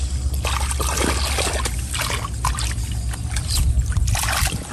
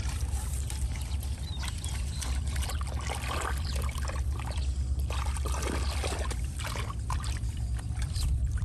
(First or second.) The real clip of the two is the first